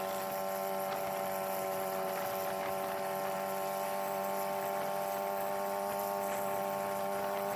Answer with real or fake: real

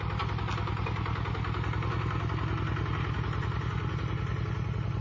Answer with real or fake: real